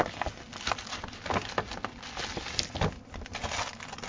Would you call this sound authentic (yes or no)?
yes